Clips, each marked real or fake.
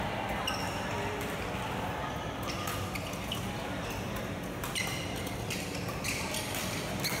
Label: real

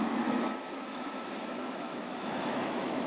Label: fake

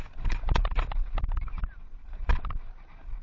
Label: real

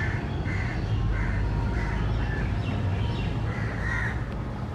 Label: real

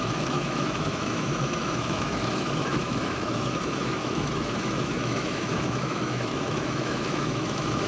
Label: fake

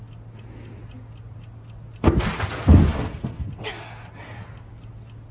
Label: real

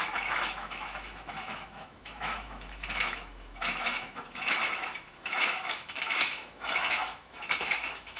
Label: fake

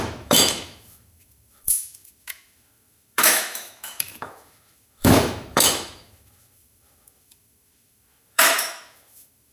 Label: fake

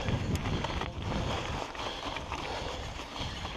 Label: real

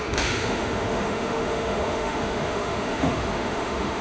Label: fake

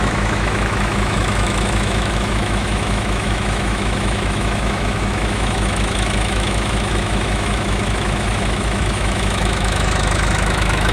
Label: fake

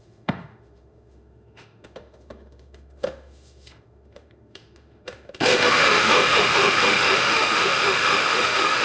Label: fake